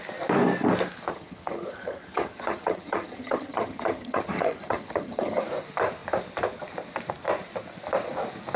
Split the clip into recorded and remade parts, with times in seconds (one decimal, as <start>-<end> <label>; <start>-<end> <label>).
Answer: 0.0-1.1 recorded; 1.1-5.4 remade; 5.4-8.6 recorded